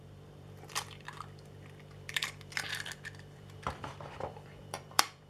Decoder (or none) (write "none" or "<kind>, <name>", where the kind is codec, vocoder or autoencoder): vocoder, BigVGAN v2